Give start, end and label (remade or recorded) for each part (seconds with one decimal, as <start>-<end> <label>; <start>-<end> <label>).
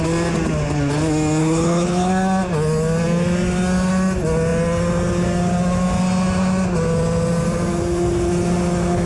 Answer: 0.0-1.4 recorded; 1.4-2.1 remade; 2.1-9.1 recorded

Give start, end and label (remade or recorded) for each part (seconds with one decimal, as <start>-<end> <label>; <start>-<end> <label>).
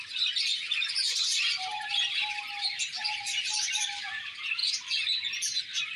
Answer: 0.0-0.5 recorded; 0.5-2.3 remade; 2.3-3.0 recorded; 3.0-4.0 remade; 4.0-6.0 recorded